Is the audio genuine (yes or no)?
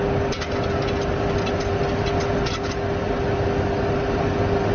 yes